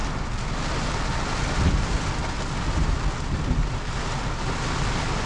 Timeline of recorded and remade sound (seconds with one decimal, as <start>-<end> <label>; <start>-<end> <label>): 0.0-5.3 recorded